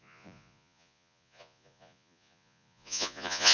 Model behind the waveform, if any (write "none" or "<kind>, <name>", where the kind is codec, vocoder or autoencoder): vocoder, Vocos